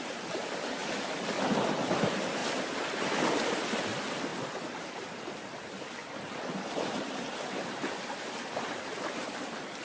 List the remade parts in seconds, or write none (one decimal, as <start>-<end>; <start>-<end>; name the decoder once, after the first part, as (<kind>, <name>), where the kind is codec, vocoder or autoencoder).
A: none